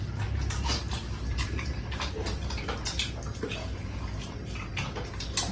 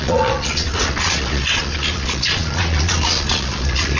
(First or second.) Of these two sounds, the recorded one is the first